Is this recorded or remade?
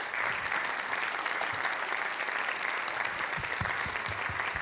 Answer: recorded